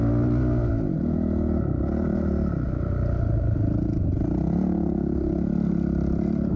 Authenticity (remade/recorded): recorded